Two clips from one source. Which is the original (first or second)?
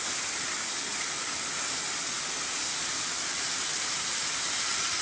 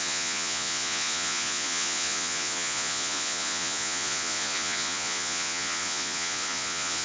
first